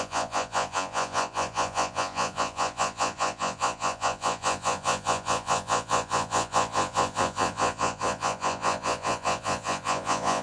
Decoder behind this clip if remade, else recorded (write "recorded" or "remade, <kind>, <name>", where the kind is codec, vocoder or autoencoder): remade, vocoder, Vocos